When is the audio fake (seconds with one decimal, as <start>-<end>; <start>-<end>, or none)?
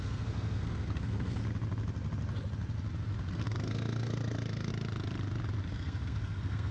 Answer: 0.0-1.4; 3.3-4.7; 5.7-6.7